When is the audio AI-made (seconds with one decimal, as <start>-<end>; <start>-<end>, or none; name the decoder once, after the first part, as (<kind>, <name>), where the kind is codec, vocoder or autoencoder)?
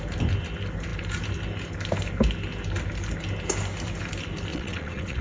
4.5-5.2 (vocoder, WaveNeXt)